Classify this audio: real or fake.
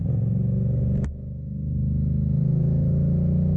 real